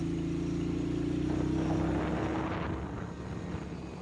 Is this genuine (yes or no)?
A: yes